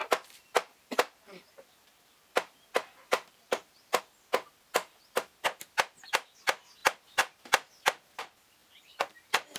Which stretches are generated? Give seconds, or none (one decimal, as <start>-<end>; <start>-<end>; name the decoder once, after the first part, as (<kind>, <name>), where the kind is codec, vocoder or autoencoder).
0.0-4.0 (vocoder, BigVGAN v2)